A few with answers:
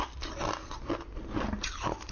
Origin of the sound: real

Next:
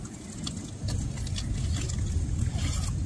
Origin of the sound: real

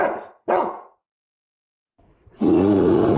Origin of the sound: fake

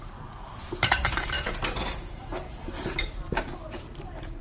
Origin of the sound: fake